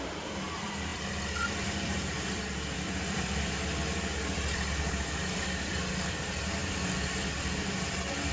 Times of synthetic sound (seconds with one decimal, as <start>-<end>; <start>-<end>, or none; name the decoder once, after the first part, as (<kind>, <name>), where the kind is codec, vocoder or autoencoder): 0.9-5.8 (vocoder, BigVGAN v2)